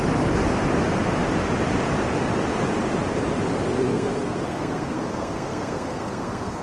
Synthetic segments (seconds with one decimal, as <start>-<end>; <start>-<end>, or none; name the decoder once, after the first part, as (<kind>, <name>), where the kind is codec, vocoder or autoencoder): 3.9-6.6 (codec, SNAC)